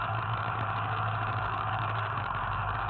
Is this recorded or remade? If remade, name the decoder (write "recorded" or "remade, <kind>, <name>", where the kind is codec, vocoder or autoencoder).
remade, codec, DAC